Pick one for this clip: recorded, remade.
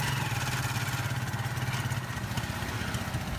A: recorded